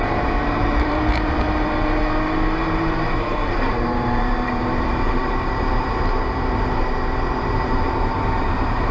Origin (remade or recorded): remade